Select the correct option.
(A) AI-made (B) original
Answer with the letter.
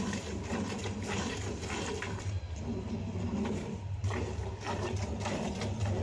B